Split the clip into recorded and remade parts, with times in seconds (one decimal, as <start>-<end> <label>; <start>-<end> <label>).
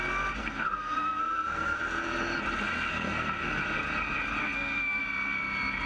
0.0-0.4 recorded; 0.4-1.8 remade; 1.8-2.9 recorded; 2.9-3.6 remade; 3.6-4.4 recorded; 4.4-5.0 remade; 5.0-5.9 recorded